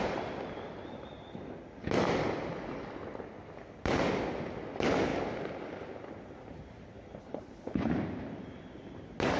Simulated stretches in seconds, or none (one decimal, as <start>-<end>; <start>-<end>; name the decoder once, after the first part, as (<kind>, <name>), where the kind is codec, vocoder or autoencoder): 7.2-7.9 (codec, HILCodec)